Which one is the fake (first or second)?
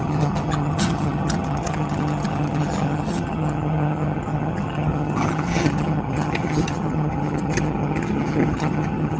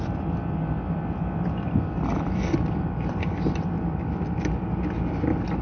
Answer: first